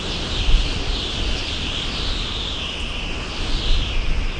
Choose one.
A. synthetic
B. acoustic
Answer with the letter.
B